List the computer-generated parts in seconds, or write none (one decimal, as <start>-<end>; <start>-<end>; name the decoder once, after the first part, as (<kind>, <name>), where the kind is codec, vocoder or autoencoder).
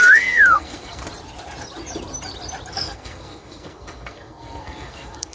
0.0-1.0 (codec, SNAC); 2.7-5.3